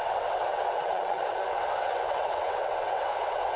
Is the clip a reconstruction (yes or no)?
yes